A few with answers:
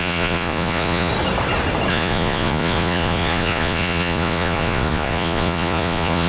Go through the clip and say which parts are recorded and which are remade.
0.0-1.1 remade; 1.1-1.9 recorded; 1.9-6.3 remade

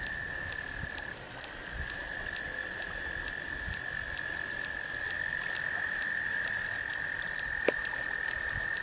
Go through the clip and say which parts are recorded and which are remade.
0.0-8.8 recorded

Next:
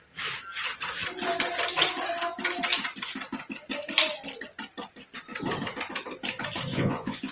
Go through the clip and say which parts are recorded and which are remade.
0.0-6.7 recorded; 6.7-7.3 remade

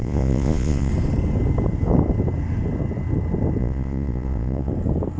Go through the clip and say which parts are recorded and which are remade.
0.0-0.9 remade; 0.9-3.6 recorded; 3.6-4.7 remade; 4.7-5.2 recorded

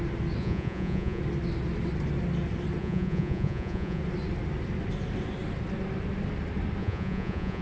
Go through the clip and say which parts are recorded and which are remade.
0.0-0.4 recorded; 0.4-1.2 remade; 1.2-2.8 recorded; 2.8-4.0 remade; 4.0-6.8 recorded; 6.8-7.6 remade